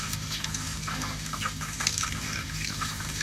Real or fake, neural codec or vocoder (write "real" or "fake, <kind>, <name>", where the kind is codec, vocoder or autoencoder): fake, codec, DAC